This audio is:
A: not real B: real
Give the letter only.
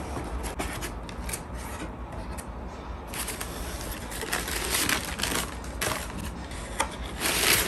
B